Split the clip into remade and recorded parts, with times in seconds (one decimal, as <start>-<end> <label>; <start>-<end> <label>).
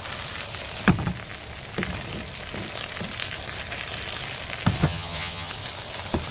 0.0-4.8 recorded; 4.8-5.5 remade; 5.5-6.3 recorded